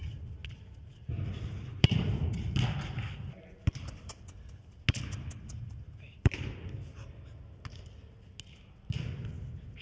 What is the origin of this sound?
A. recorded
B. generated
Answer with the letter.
A